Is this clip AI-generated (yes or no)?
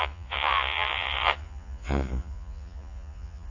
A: yes